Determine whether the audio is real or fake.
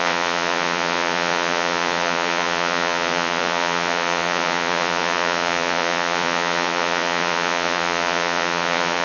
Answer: fake